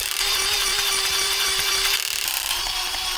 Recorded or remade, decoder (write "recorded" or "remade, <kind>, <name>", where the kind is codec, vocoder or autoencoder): remade, vocoder, BigVGAN v2